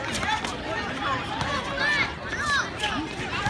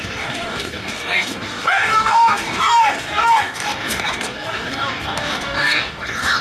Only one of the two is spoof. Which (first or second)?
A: second